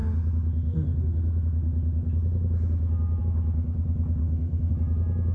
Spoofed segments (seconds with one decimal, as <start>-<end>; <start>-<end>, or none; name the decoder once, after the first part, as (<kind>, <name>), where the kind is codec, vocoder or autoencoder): 4.2-4.7 (codec, SNAC)